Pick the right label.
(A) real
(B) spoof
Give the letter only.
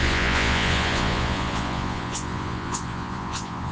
B